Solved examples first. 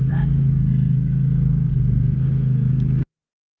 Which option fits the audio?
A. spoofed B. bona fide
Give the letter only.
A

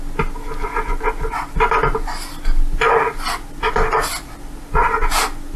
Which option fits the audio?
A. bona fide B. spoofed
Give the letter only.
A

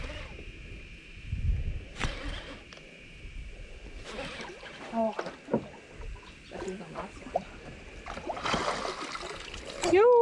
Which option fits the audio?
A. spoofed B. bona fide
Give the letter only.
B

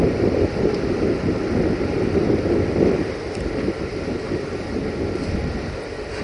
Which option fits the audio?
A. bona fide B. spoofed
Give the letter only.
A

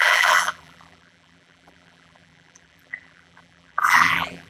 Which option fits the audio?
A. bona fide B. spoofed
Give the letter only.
B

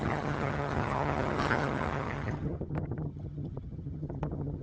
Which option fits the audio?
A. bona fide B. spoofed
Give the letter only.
B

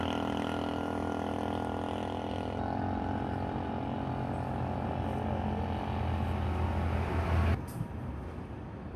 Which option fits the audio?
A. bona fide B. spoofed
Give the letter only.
A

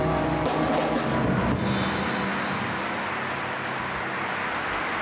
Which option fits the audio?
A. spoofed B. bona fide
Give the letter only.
B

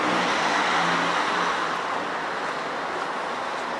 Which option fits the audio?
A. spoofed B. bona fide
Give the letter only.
B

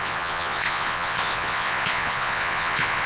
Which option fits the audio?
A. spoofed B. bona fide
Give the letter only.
A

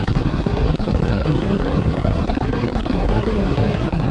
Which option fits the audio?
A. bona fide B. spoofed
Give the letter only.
B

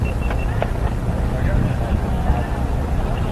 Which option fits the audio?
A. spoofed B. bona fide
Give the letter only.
B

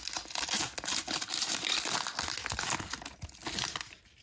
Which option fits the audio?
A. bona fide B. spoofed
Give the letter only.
A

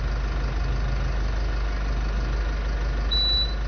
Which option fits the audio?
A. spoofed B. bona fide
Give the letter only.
B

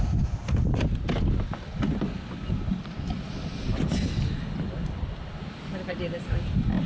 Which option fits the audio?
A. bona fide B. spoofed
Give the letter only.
A